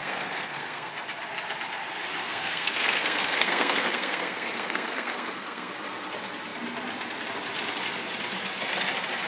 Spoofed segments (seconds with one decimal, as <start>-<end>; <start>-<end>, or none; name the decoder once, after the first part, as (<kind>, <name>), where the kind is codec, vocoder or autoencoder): 0.0-0.9 (codec, SNAC); 2.2-5.7